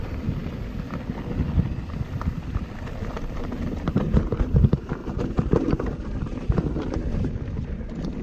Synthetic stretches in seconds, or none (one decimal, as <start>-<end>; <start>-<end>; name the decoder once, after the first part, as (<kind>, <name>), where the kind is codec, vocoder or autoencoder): 0.0-5.0 (vocoder, BigVGAN v2); 5.9-8.2

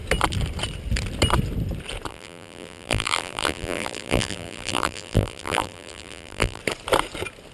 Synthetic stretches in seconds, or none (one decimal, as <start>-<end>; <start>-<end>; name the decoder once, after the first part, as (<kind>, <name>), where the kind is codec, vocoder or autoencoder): 2.1-6.6 (vocoder, BigVGAN v2)

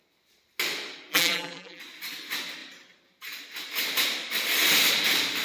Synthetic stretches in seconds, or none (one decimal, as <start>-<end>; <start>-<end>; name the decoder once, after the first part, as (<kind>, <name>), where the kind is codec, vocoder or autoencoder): 1.1-1.8 (vocoder, BigVGAN v2)

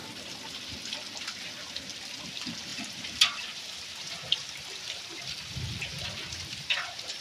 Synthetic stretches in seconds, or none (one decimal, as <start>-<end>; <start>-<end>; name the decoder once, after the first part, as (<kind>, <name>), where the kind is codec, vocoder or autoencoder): 2.7-7.2 (vocoder, BigVGAN v2)